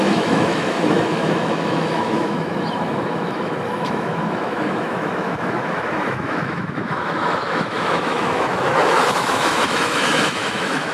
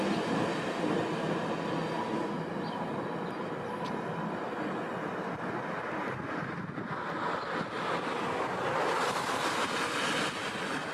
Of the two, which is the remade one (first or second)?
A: first